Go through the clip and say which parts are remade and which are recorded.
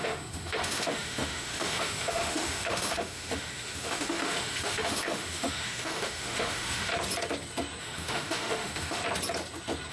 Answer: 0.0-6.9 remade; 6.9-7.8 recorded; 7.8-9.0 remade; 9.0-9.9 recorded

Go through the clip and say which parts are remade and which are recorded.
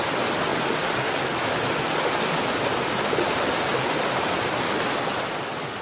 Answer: 0.0-5.8 recorded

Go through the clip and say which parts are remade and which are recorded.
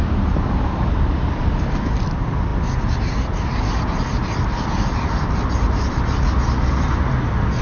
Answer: 0.0-7.6 recorded